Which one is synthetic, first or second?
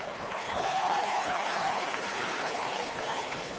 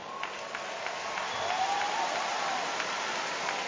first